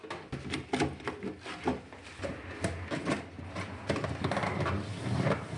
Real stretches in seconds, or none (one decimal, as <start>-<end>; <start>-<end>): 0.0-5.6